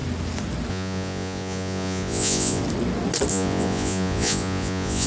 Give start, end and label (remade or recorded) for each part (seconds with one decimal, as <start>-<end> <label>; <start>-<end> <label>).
0.0-0.7 recorded; 0.7-2.6 remade; 2.6-3.3 recorded; 3.3-5.1 remade

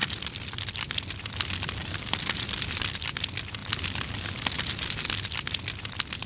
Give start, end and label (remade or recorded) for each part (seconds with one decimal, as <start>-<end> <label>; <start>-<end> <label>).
0.0-1.1 remade; 1.1-1.8 recorded; 1.8-3.1 remade; 3.1-6.3 recorded

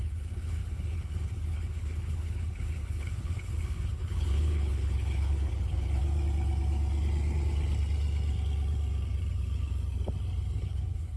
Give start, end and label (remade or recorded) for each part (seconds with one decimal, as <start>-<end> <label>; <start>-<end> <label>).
0.0-6.0 remade; 6.0-10.6 recorded; 10.6-11.2 remade